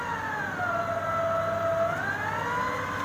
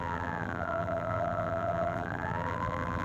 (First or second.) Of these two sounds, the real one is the first